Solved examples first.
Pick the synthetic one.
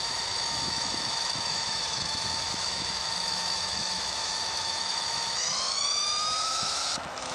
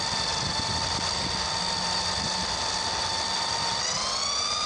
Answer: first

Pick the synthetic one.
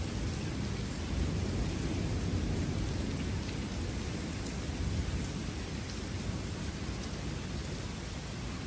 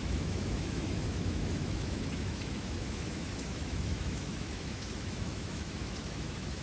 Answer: second